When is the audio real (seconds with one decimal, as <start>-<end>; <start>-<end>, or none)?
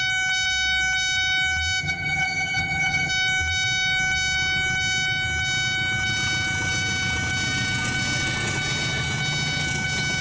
0.0-1.8; 3.1-10.2